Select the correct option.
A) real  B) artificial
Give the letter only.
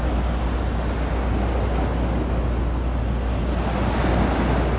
A